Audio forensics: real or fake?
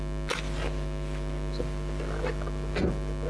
real